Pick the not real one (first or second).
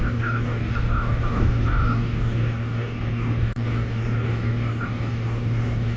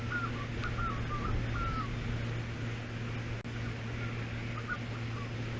first